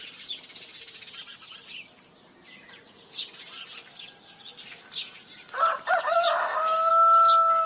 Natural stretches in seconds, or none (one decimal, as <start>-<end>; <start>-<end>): 0.0-6.4; 6.9-7.7